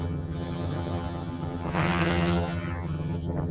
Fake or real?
fake